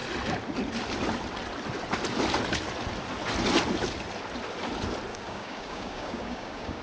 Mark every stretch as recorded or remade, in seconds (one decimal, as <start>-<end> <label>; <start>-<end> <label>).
0.0-5.1 recorded; 5.1-6.8 remade